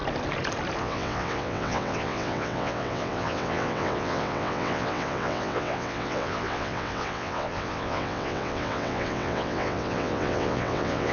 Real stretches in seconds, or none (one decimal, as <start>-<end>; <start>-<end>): 0.0-0.8